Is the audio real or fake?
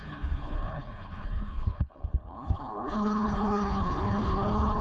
fake